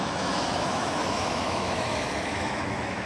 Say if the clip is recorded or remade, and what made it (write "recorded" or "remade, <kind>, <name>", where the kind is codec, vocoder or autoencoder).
remade, autoencoder, DAC-VAE